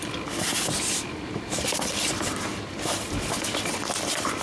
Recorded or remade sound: remade